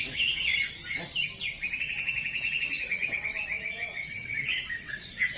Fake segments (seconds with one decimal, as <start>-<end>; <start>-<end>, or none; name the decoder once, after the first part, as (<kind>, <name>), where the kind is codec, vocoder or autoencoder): 0.0-0.5 (vocoder, WaveNeXt); 1.8-5.4